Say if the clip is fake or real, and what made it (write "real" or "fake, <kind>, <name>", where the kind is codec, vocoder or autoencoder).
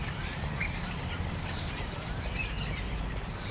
fake, vocoder, BigVGAN v2